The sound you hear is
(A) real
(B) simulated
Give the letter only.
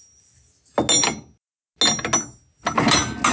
A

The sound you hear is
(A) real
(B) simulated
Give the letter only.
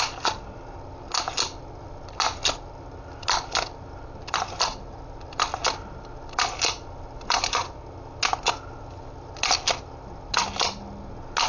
A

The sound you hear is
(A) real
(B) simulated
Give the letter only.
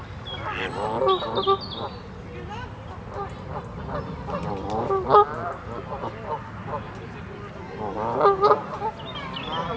A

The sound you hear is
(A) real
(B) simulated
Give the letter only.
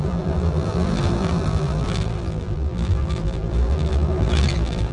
B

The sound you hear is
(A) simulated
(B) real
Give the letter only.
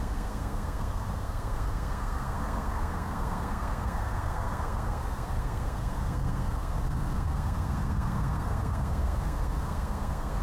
A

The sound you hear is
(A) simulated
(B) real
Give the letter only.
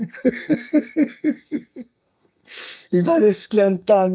A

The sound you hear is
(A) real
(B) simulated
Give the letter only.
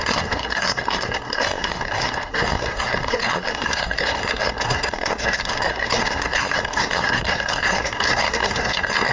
B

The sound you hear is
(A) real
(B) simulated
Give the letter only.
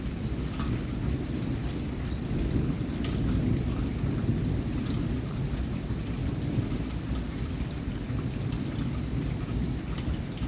A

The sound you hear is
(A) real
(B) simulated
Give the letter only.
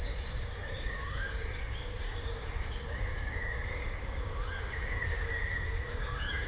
B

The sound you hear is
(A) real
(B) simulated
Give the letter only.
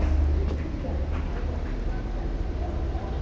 A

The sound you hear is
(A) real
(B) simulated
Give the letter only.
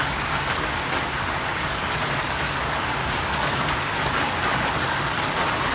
B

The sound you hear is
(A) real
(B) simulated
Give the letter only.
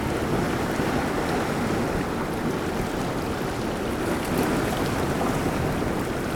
A